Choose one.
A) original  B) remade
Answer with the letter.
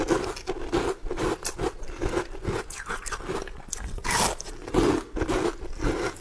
A